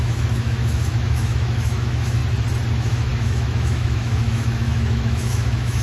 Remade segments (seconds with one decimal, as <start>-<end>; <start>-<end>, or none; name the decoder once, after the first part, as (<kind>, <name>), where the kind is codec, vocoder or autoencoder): 0.0-2.2 (autoencoder, DAC-VAE); 2.7-5.8